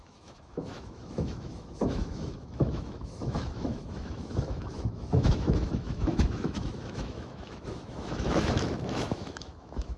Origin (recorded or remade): remade